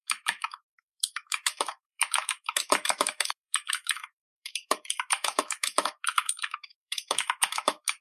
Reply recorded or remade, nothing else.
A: remade